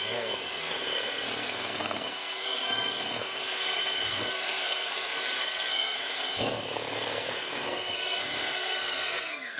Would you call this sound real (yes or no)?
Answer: no